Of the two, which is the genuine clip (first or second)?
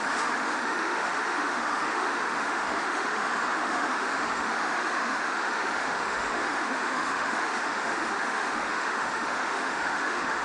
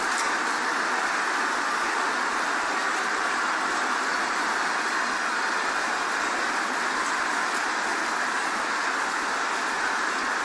second